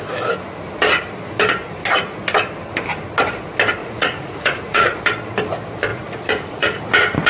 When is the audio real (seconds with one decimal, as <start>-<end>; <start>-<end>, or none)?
0.0-3.8; 5.0-5.9; 6.8-7.3